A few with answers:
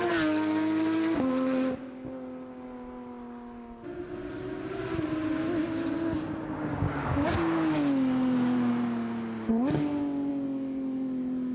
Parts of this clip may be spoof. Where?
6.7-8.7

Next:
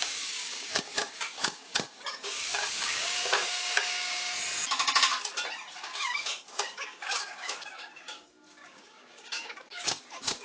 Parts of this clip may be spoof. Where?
0.0-4.3; 5.8-10.4

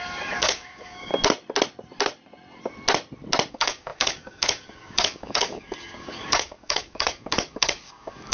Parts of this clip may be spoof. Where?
0.0-1.1; 3.5-8.3